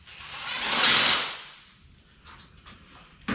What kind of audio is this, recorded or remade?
recorded